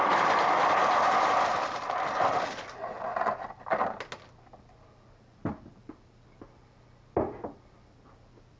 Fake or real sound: real